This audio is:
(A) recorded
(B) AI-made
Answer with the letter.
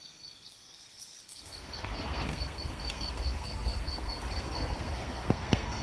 B